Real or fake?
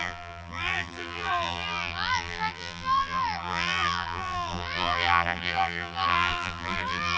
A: fake